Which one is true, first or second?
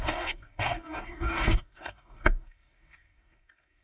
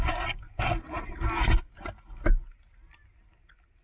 second